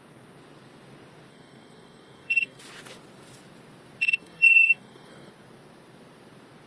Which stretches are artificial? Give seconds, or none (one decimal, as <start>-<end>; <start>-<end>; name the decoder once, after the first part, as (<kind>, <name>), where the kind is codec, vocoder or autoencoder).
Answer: 1.3-2.6 (codec, SNAC); 4.2-5.3